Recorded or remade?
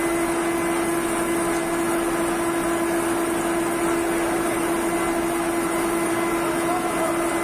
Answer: recorded